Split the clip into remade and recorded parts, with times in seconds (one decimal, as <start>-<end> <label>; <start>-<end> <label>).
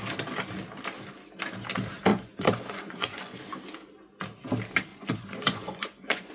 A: 0.0-2.1 recorded; 2.1-3.4 remade; 3.4-4.9 recorded; 4.9-6.3 remade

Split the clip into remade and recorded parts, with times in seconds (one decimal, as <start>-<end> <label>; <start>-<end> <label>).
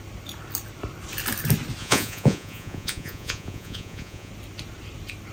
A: 0.0-1.8 recorded; 1.8-4.3 remade; 4.3-5.3 recorded